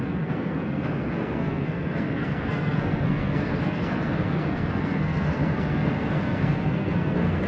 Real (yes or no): no